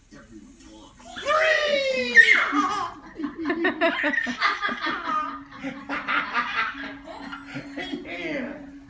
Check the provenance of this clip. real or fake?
real